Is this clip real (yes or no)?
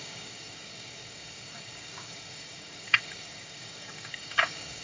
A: no